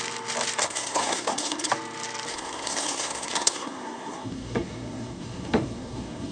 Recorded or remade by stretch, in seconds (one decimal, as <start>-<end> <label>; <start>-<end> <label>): 0.0-0.6 recorded; 0.6-1.7 remade; 1.7-2.3 recorded; 2.3-6.3 remade